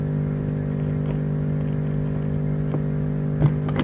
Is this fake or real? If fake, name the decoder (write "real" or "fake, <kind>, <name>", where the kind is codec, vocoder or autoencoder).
real